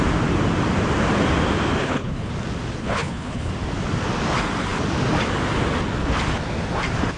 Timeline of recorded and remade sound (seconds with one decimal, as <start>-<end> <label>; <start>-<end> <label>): 0.0-1.8 recorded; 1.8-2.3 remade; 2.3-2.8 recorded; 2.8-3.5 remade; 3.5-7.2 recorded